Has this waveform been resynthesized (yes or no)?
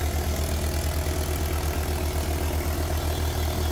no